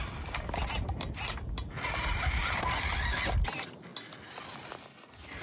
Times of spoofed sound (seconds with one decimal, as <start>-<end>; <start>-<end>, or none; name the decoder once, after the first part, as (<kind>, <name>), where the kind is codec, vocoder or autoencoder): none